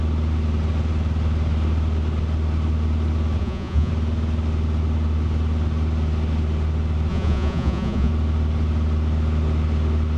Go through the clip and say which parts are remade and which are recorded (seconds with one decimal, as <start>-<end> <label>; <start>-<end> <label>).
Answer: 0.0-3.4 recorded; 3.4-3.9 remade; 3.9-7.1 recorded; 7.1-8.1 remade; 8.1-10.2 recorded